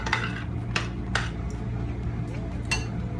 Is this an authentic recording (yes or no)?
yes